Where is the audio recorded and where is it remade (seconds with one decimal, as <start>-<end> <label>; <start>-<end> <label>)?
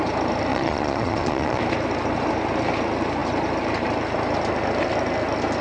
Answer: 0.0-0.5 recorded; 0.5-1.6 remade; 1.6-5.6 recorded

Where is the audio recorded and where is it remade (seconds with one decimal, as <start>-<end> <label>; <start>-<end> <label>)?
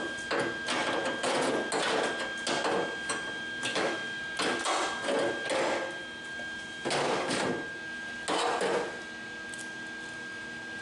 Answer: 0.0-3.7 recorded; 3.7-4.2 remade; 4.2-10.8 recorded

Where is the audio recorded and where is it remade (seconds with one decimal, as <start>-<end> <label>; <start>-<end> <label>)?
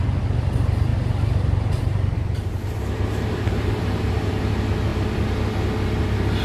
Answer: 0.0-0.9 recorded; 0.9-4.3 remade; 4.3-6.4 recorded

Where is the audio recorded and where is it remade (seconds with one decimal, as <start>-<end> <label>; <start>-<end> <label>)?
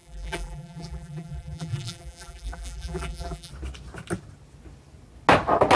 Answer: 0.0-3.5 remade; 3.5-5.8 recorded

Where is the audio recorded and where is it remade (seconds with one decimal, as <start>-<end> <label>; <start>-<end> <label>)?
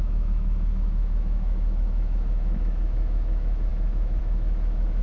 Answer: 0.0-5.0 remade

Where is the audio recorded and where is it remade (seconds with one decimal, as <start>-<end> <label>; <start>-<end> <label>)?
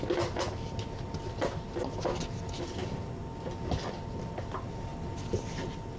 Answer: 0.0-6.0 recorded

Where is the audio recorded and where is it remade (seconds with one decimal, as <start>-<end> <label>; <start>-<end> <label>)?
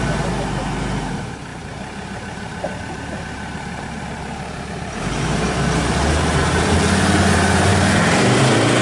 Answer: 0.0-1.5 recorded; 1.5-6.7 remade; 6.7-7.7 recorded; 7.7-8.4 remade; 8.4-8.8 recorded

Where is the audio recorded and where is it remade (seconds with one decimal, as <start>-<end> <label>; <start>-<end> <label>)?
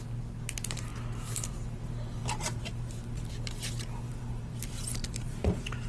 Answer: 0.0-2.2 recorded; 2.2-3.1 remade; 3.1-4.1 recorded; 4.1-5.9 remade